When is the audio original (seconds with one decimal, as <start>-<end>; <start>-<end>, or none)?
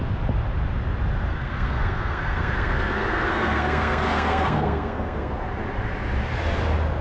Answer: 0.0-1.3; 5.4-7.0